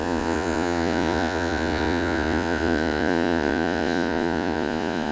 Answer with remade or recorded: remade